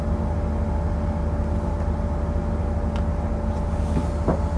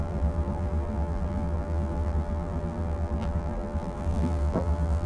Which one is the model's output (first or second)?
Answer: second